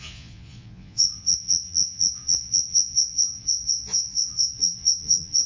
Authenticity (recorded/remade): remade